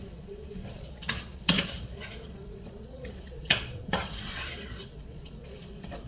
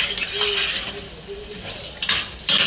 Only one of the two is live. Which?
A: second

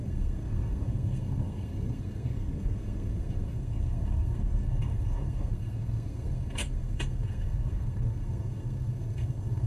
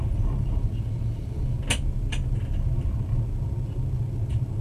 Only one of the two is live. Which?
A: second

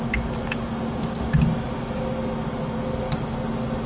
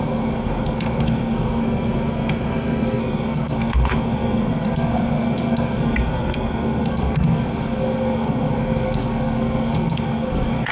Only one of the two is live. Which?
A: first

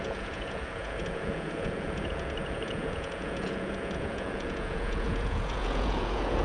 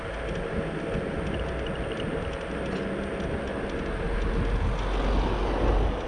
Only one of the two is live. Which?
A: second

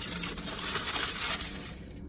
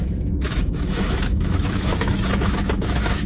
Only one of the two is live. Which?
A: first